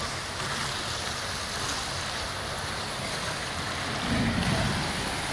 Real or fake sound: real